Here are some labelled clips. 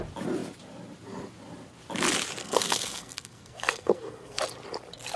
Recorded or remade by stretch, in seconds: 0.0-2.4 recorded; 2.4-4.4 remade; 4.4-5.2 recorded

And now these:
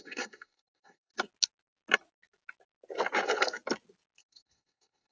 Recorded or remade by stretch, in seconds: 0.0-1.1 remade; 1.1-4.2 recorded; 4.2-5.1 remade

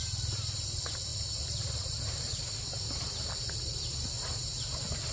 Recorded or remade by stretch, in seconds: 0.0-5.1 recorded

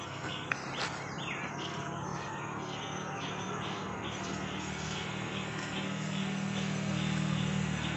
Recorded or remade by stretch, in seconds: 0.0-0.6 remade; 0.6-1.5 recorded; 1.5-8.0 remade